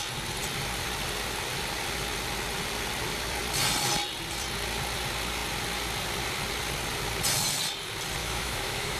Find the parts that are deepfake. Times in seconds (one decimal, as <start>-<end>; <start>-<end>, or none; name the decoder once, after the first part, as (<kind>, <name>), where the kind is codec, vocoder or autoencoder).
8.2-9.0 (autoencoder, DAC-VAE)